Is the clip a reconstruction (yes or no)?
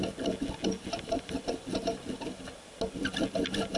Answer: no